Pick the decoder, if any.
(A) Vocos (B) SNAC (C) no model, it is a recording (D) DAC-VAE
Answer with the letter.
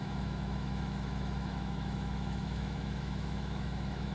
D